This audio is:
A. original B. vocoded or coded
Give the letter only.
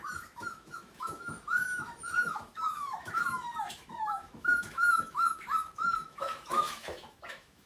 B